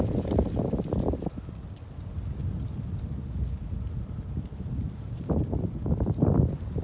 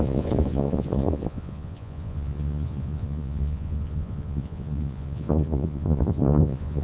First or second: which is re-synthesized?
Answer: second